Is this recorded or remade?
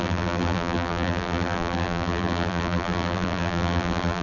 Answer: remade